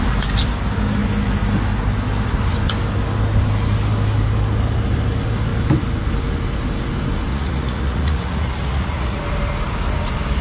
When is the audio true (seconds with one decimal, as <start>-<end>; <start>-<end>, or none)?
0.0-7.3; 9.2-10.4